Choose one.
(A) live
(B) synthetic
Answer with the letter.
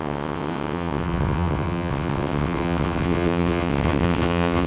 B